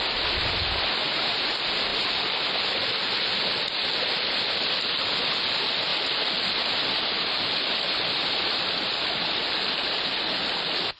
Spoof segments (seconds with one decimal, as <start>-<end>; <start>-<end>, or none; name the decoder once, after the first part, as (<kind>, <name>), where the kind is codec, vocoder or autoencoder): 5.9-10.0 (vocoder, BigVGAN v2)